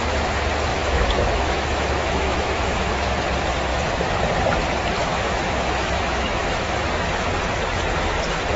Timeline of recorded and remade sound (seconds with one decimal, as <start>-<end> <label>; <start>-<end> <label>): 0.0-0.7 recorded; 0.7-3.2 remade; 3.2-5.0 recorded; 5.0-6.9 remade; 6.9-8.6 recorded